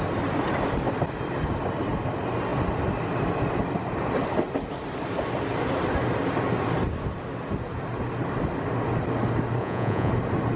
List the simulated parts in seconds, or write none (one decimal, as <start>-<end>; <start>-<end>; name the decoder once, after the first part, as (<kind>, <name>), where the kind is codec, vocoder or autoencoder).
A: 9.6-10.1 (vocoder, Vocos)